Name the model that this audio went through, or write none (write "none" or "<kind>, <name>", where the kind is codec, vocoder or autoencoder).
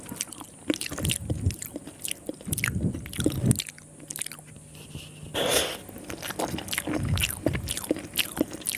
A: none